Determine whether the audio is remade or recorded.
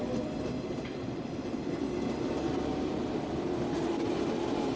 recorded